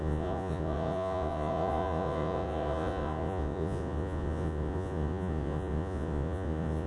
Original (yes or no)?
no